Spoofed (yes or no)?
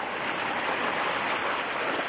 no